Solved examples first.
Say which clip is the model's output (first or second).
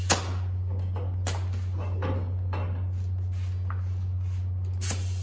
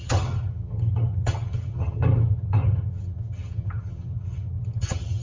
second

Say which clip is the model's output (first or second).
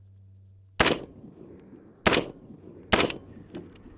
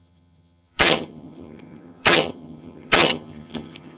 second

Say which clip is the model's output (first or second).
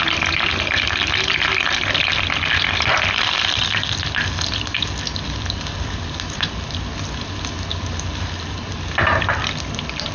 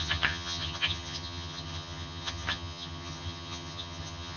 second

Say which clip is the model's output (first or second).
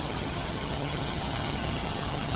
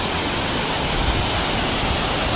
first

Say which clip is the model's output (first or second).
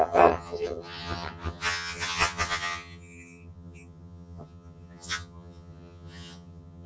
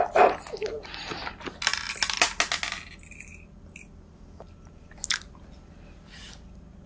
first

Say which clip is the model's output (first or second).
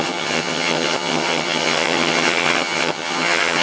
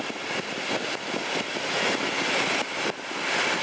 first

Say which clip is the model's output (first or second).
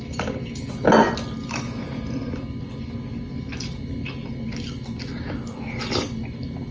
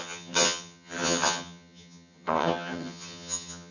second